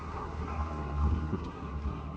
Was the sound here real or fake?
fake